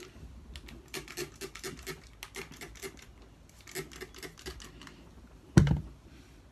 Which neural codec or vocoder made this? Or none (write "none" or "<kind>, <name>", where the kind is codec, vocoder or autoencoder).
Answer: none